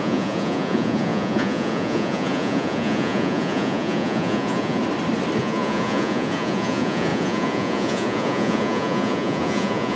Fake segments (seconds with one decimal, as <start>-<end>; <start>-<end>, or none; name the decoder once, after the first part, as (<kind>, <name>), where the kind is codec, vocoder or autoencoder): 0.0-4.8 (vocoder, Vocos); 5.4-10.0